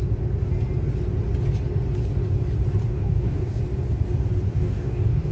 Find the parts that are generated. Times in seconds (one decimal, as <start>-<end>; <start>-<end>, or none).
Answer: 2.8-3.6; 4.5-5.3